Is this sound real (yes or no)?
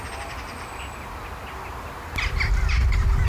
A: yes